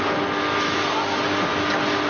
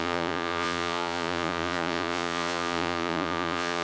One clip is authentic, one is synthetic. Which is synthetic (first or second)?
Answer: second